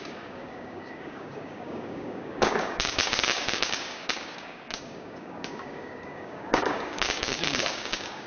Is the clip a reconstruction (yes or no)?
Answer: yes